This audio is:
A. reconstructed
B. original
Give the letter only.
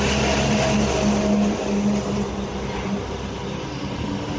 B